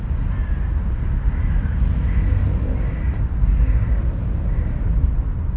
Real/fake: real